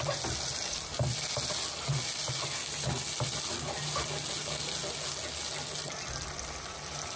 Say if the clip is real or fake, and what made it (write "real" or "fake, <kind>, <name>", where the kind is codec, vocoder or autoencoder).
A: real